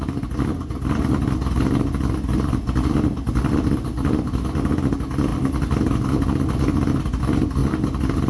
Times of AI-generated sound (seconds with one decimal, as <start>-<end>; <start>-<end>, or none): none